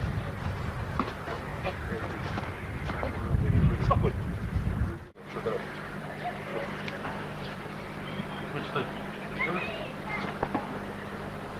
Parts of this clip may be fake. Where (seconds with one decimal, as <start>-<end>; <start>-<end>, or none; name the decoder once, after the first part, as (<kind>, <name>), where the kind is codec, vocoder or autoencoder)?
6.5-10.1 (vocoder, BigVGAN v2)